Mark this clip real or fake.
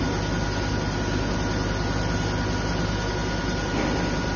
real